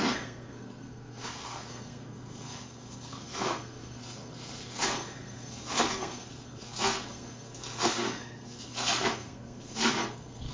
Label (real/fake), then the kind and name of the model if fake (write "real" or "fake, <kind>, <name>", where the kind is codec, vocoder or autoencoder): fake, codec, SNAC